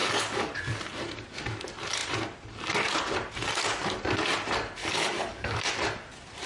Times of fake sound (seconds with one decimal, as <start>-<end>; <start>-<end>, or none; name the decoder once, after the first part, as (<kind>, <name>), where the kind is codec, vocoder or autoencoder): 0.0-0.6 (codec, DAC); 4.8-5.7